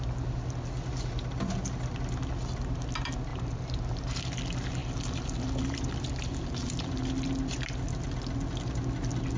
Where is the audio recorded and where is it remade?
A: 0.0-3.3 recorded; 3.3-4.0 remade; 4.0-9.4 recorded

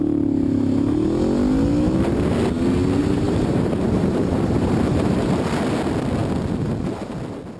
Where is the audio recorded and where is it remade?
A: 0.0-3.0 recorded; 3.0-5.3 remade; 5.3-7.6 recorded

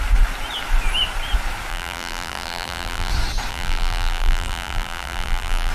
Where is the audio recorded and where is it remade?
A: 0.0-1.7 recorded; 1.7-3.1 remade; 3.1-3.5 recorded; 3.5-5.7 remade

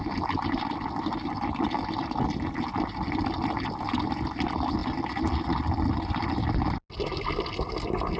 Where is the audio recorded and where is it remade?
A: 0.0-8.2 recorded

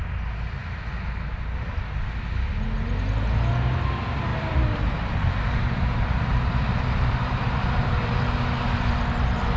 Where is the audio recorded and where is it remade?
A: 0.0-4.3 recorded; 4.3-8.3 remade; 8.3-9.6 recorded

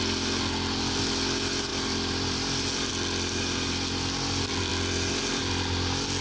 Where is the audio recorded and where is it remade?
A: 0.0-1.7 recorded; 1.7-2.9 remade; 2.9-4.7 recorded; 4.7-5.4 remade; 5.4-6.2 recorded